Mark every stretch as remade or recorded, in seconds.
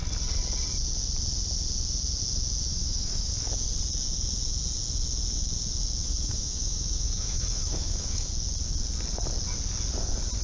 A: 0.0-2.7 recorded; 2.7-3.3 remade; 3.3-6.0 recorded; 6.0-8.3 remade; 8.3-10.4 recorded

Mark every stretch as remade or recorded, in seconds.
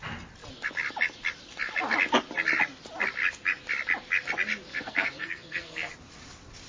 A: 0.0-4.7 recorded; 4.7-5.9 remade; 5.9-6.7 recorded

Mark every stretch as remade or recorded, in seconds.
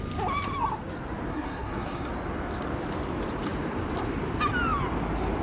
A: 0.0-1.3 recorded; 1.3-2.1 remade; 2.1-5.4 recorded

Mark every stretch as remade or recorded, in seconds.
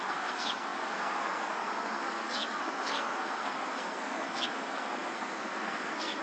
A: 0.0-6.2 remade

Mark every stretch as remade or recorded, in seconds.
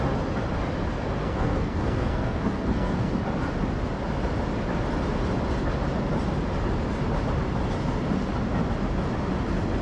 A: 0.0-1.2 recorded; 1.2-3.1 remade; 3.1-9.8 recorded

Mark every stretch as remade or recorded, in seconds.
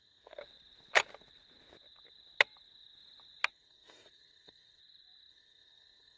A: 0.0-0.4 remade; 0.4-3.5 recorded; 3.5-4.8 remade; 4.8-5.3 recorded; 5.3-6.2 remade